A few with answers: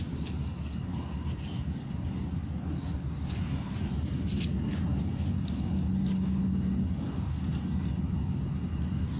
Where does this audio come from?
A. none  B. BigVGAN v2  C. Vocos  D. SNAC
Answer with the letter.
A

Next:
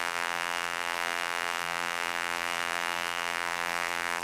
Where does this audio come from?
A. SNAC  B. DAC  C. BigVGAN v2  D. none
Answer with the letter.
C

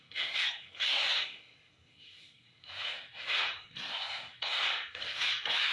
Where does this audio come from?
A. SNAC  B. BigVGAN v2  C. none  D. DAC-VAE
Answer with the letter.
A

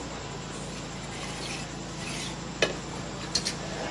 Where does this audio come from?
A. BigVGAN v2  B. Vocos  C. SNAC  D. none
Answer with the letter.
D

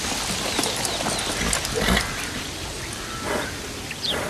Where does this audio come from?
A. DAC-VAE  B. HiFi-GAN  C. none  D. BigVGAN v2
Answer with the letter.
C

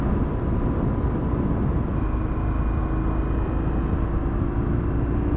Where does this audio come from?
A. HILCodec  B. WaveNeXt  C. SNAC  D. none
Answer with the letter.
D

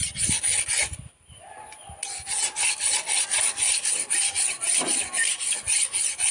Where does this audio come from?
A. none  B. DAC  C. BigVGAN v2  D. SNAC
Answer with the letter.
A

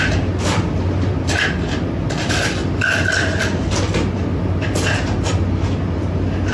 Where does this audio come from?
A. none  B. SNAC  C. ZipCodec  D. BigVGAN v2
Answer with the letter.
A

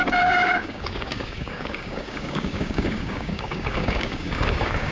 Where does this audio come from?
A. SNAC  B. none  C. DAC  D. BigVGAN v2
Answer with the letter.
C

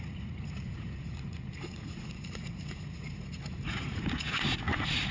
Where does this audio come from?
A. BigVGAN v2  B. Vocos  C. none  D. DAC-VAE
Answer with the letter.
B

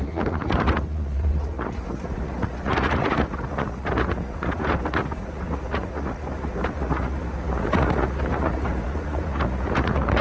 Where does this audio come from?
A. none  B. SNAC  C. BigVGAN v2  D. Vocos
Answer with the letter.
D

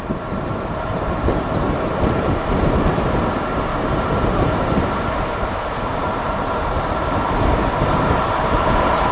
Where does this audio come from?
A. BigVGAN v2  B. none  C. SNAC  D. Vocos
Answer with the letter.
A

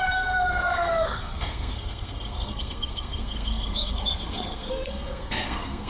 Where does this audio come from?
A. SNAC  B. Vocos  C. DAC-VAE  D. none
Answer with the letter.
A